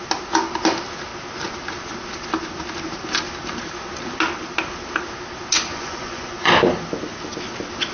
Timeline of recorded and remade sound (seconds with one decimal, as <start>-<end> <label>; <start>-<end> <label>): 0.0-5.7 recorded; 5.7-6.5 remade; 6.5-7.9 recorded